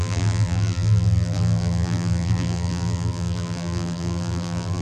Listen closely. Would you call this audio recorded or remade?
remade